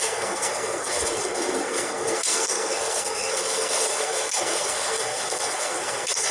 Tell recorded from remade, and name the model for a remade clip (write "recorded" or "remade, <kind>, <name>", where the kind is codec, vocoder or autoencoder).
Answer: remade, codec, SNAC